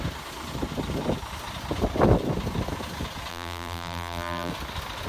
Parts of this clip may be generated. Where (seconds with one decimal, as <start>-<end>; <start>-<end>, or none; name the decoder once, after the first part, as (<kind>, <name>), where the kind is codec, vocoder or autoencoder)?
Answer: 3.3-4.5 (vocoder, BigVGAN v2)